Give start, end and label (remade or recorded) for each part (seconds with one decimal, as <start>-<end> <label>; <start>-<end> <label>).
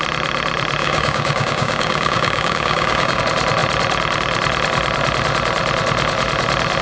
0.0-0.8 recorded; 0.8-3.2 remade; 3.2-6.8 recorded